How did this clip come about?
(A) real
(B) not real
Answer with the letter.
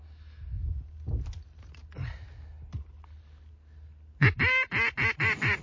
A